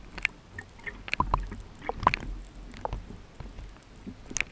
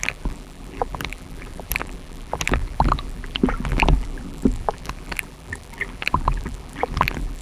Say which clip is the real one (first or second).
first